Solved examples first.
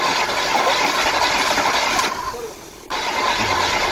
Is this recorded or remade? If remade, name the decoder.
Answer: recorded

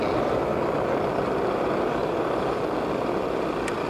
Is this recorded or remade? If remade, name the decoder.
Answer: recorded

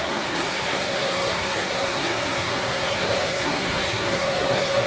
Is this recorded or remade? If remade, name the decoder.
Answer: remade, codec, SNAC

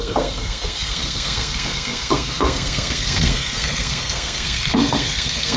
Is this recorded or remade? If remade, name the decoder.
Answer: remade, codec, SNAC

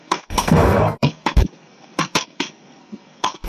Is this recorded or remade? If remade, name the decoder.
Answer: remade, codec, SNAC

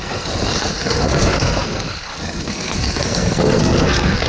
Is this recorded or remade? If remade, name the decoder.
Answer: remade, codec, SNAC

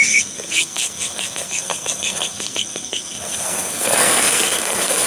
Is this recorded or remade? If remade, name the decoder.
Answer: remade, codec, SNAC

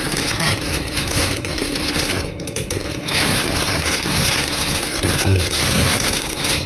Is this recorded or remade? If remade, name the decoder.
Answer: remade, codec, SNAC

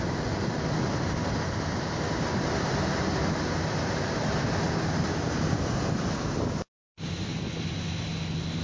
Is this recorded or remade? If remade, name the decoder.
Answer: recorded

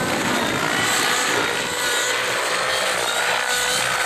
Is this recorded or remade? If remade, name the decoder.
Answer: recorded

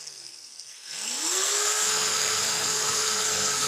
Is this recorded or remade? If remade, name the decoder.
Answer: remade, codec, SNAC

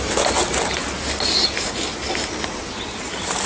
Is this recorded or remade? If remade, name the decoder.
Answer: recorded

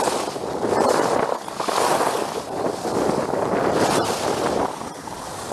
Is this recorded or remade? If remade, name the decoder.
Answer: recorded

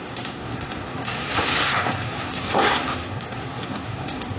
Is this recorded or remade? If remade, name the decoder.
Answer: remade, codec, SNAC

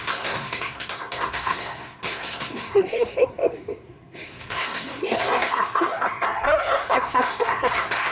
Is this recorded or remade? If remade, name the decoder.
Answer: remade, codec, SNAC